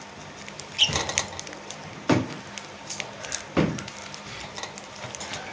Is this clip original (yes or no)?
yes